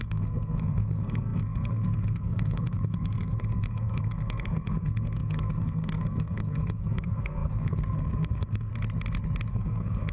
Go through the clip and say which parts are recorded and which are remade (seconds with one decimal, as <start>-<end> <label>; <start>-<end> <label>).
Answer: 0.0-8.7 remade; 8.7-9.5 recorded; 9.5-10.1 remade

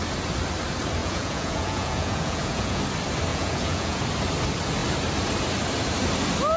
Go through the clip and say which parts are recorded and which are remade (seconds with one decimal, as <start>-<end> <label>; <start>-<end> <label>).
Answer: 0.0-1.0 recorded; 1.0-2.8 remade; 2.8-3.3 recorded; 3.3-4.0 remade; 4.0-6.6 recorded

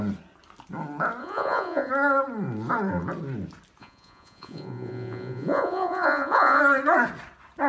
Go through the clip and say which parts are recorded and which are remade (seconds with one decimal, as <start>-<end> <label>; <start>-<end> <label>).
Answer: 0.0-1.2 recorded; 1.2-1.9 remade; 1.9-3.8 recorded; 3.8-6.6 remade; 6.6-7.7 recorded